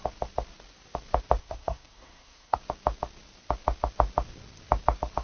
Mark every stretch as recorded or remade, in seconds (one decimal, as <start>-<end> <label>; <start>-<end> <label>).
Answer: 0.0-1.4 recorded; 1.4-2.6 remade; 2.6-5.2 recorded